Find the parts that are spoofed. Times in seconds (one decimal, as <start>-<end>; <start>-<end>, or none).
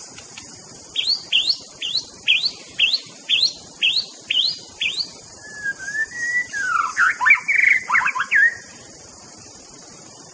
none